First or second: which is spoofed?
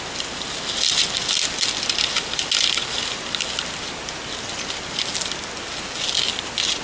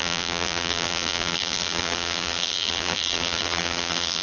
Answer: second